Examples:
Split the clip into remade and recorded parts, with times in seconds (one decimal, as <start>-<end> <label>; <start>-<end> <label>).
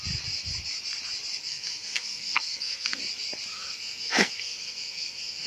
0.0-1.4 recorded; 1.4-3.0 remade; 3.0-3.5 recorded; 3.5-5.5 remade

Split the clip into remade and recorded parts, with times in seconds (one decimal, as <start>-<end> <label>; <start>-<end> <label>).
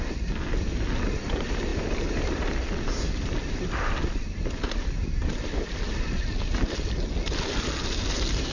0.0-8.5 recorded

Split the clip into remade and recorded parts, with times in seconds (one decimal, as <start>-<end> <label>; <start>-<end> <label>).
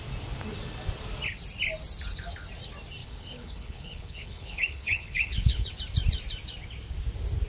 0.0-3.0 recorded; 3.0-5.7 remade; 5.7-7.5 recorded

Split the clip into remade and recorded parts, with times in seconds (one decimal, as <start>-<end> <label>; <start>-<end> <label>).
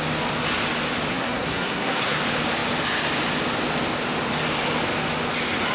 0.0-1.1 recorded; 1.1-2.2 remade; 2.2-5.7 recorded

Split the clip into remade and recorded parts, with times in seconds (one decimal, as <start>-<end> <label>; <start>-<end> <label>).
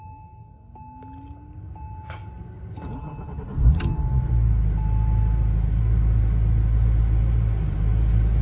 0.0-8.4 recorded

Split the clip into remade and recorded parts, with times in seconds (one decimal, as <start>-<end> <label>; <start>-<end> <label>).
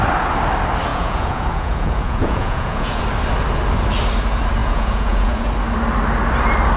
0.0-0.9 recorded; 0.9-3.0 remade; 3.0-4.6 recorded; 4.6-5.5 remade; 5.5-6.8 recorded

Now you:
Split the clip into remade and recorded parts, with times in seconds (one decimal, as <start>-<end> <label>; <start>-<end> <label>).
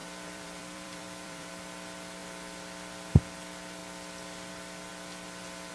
0.0-1.5 remade; 1.5-5.7 recorded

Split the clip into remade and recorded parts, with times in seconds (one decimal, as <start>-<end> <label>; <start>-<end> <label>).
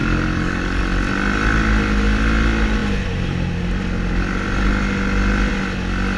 0.0-0.8 remade; 0.8-6.2 recorded